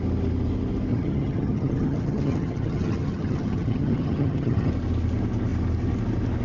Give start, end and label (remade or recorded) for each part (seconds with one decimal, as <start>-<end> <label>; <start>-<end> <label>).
0.0-0.9 recorded; 0.9-4.7 remade; 4.7-6.4 recorded